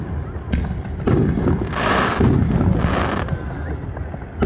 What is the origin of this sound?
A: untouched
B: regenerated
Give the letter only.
A